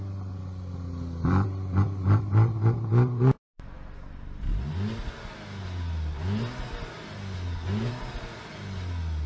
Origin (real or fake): real